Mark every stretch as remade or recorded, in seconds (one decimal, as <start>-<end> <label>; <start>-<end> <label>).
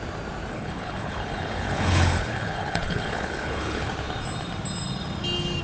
0.0-0.5 recorded; 0.5-3.9 remade; 3.9-5.6 recorded